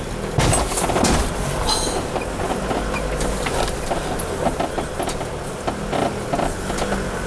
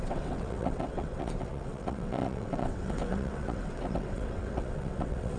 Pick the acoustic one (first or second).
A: first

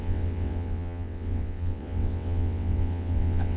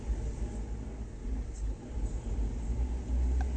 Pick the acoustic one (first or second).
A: second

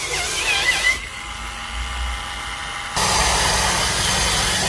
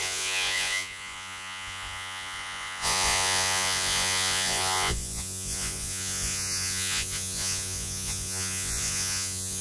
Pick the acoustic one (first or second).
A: first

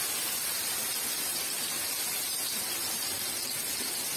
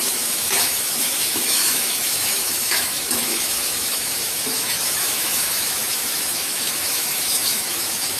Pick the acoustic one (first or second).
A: first